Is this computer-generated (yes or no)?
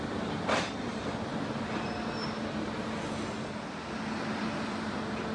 no